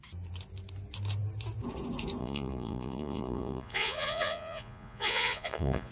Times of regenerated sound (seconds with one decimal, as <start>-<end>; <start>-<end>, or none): 2.2-5.9